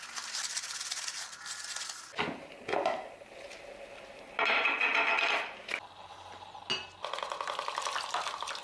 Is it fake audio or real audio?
real